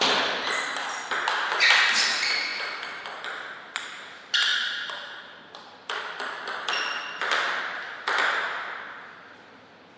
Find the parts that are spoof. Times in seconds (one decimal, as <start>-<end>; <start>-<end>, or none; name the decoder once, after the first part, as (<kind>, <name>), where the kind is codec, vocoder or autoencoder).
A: none